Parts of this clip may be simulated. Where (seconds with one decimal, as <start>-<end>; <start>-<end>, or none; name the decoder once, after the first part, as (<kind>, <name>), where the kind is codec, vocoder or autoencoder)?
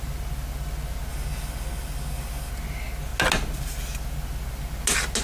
1.1-2.5 (codec, DAC)